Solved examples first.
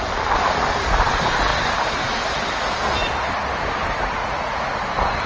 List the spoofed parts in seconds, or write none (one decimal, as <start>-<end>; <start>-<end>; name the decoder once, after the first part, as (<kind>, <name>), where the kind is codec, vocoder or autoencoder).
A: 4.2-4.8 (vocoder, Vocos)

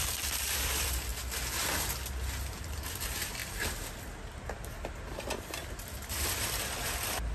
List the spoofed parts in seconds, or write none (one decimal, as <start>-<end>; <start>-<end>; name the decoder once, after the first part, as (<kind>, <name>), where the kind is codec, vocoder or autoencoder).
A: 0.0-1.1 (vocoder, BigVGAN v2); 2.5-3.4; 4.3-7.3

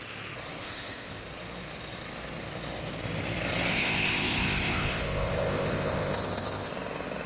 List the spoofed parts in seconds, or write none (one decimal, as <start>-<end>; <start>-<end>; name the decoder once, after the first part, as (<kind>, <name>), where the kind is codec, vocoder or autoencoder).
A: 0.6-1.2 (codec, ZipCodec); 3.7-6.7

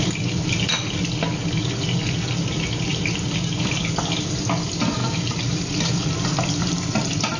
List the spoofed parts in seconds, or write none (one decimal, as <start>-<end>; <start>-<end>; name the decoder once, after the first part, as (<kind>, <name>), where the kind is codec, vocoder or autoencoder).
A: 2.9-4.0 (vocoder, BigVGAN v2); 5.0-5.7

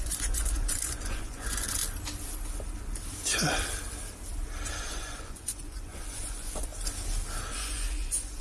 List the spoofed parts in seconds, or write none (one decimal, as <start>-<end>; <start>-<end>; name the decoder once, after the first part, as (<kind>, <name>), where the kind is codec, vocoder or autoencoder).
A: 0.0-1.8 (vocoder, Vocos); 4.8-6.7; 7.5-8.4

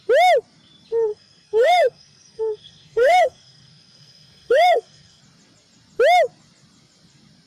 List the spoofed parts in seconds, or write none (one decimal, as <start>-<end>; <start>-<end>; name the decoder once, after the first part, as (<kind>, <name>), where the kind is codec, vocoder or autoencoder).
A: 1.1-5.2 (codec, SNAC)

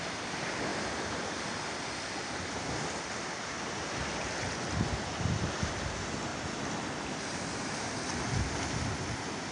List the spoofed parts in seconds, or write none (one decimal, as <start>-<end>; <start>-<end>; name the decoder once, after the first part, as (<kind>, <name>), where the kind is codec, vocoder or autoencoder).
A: 0.0-0.7 (vocoder, BigVGAN v2); 3.4-6.3; 7.4-9.5